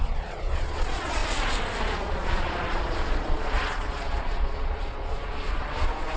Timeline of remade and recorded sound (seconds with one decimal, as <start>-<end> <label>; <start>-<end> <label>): 0.0-1.2 remade; 1.2-1.8 recorded; 1.8-6.2 remade